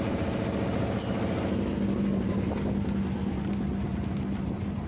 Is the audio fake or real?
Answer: real